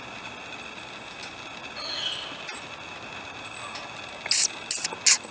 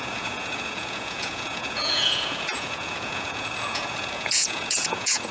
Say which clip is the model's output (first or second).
second